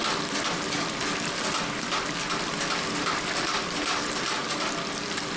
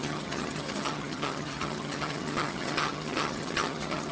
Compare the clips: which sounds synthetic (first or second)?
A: second